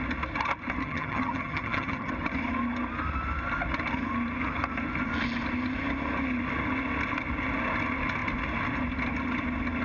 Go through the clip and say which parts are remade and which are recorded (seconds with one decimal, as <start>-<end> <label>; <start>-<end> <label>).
0.0-0.8 recorded; 0.8-2.1 remade; 2.1-9.8 recorded